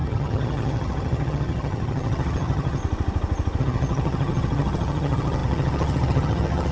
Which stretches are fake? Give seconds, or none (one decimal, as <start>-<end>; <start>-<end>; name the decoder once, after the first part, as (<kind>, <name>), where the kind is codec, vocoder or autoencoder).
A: 0.0-2.8 (vocoder, HiFi-GAN); 3.6-6.7